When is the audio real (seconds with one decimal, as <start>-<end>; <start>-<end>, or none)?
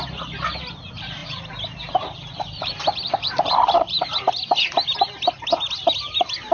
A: 0.0-1.2; 4.3-6.5